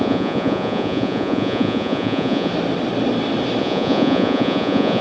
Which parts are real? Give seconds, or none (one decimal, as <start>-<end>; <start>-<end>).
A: 2.5-3.6